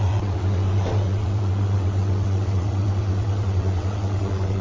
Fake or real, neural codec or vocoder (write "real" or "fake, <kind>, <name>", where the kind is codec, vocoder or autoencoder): fake, vocoder, WaveNeXt